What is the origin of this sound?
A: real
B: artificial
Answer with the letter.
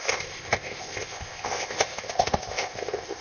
B